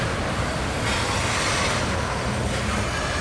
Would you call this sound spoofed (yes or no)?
no